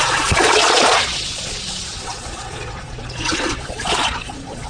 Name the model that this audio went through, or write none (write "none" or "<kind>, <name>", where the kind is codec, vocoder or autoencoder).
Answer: vocoder, Vocos